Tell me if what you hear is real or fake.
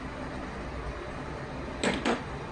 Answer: real